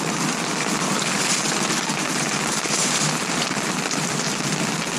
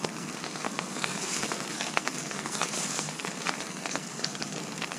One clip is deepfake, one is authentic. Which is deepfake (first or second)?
second